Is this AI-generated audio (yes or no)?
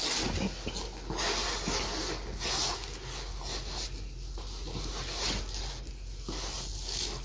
no